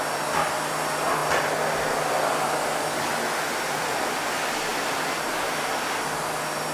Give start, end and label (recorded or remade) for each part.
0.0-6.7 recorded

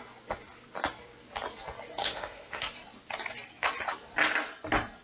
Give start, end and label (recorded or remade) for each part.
0.0-2.0 recorded; 2.0-2.6 remade; 2.6-5.0 recorded

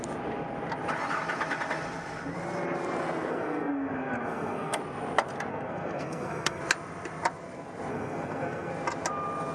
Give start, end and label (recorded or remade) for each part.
0.0-3.3 recorded; 3.3-4.8 remade; 4.8-5.5 recorded; 5.5-6.6 remade; 6.6-7.9 recorded; 7.9-8.7 remade; 8.7-9.5 recorded